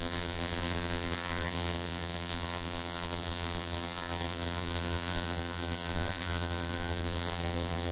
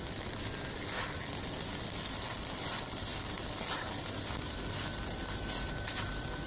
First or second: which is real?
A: second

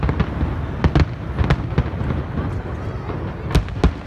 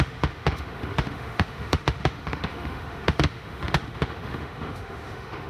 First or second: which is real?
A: first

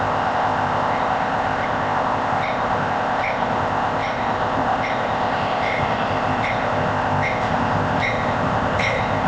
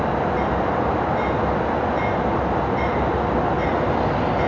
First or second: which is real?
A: second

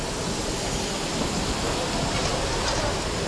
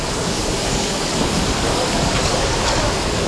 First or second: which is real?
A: first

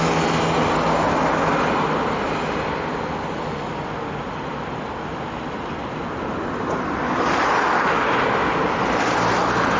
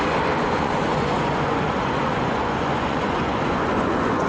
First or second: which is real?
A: first